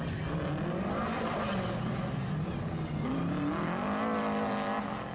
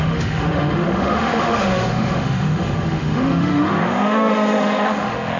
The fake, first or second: second